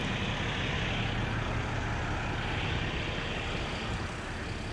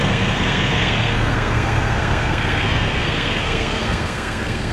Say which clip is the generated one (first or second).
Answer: second